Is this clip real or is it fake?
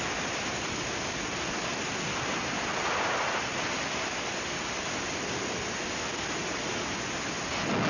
real